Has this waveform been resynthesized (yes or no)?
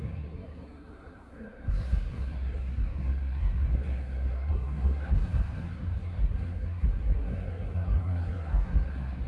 yes